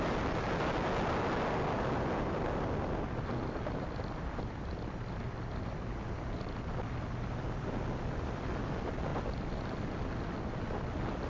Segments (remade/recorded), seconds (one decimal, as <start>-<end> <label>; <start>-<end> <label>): 0.0-11.3 recorded